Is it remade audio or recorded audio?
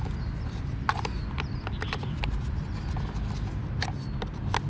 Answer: recorded